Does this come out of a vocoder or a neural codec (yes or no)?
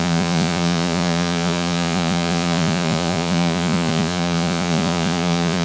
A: yes